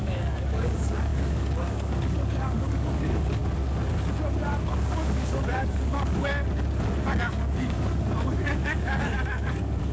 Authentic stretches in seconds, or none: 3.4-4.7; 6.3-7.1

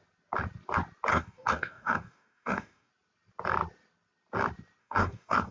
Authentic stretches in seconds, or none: 0.0-1.1; 2.9-4.8

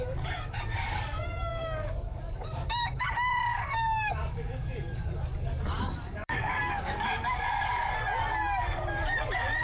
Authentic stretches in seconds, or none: none

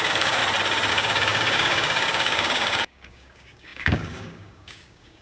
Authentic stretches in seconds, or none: 0.4-0.9

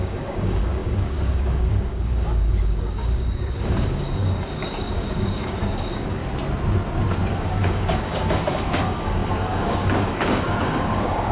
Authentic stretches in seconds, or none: 6.2-7.3

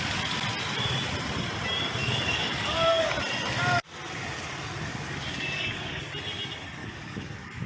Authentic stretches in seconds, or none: 0.0-2.0; 3.1-4.9; 6.0-6.8